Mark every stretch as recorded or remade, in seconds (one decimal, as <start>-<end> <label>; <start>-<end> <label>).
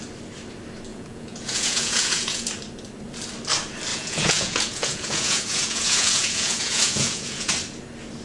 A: 0.0-0.9 recorded; 0.9-2.5 remade; 2.5-3.9 recorded; 3.9-7.5 remade; 7.5-8.2 recorded